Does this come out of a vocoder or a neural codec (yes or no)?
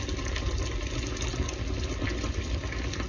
no